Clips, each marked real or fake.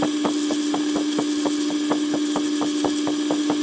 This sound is real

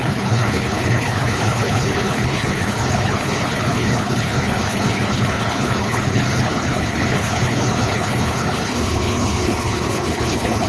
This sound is fake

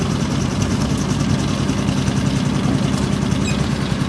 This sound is real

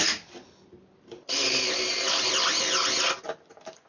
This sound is real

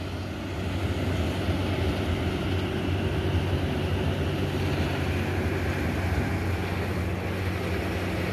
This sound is real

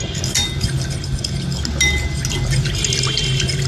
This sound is real